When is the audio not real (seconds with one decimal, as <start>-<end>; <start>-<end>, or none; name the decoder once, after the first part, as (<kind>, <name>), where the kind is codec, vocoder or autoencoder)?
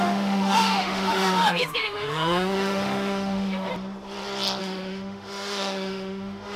0.0-3.7 (autoencoder, DAC-VAE); 4.6-6.6